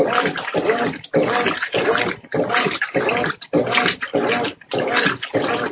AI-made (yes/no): yes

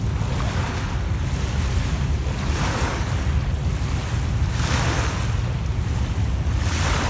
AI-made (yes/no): no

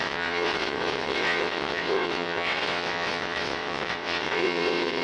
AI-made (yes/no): yes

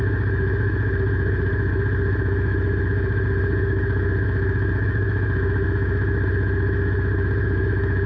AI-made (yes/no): yes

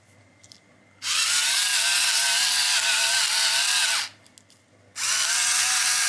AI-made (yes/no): no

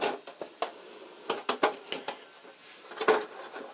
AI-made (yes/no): no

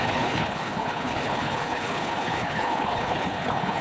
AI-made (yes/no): yes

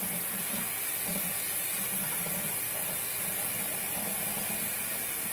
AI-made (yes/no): no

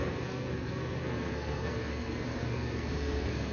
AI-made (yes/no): yes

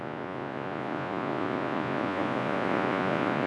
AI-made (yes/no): yes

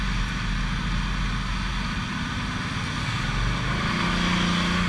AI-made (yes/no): no